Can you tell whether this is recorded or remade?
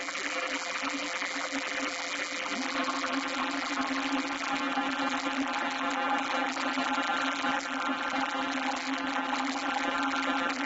remade